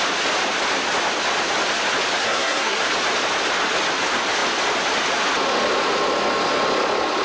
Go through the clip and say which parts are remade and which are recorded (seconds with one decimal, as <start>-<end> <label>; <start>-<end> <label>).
0.0-2.2 recorded; 2.2-2.8 remade; 2.8-7.2 recorded